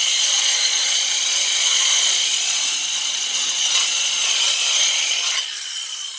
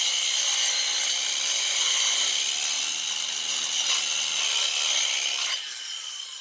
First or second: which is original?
second